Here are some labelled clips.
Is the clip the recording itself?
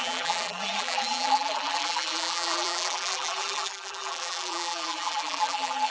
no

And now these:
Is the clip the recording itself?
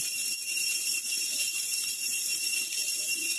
no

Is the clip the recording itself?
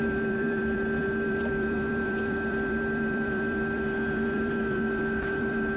no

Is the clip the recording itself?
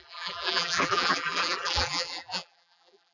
no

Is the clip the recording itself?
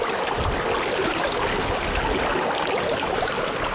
yes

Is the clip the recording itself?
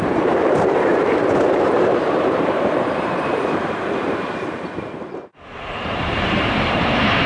no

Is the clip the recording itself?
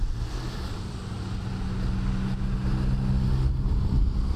yes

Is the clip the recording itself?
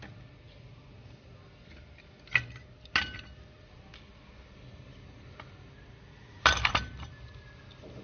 yes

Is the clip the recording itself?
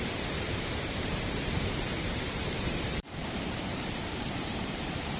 no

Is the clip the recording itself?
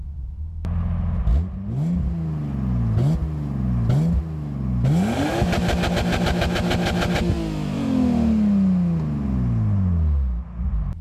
yes